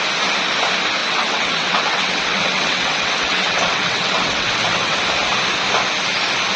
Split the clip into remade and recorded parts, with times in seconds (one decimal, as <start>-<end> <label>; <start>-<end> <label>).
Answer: 0.0-1.0 recorded; 1.0-5.0 remade; 5.0-6.6 recorded